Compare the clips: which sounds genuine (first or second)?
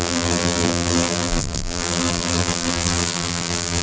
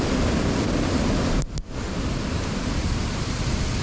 second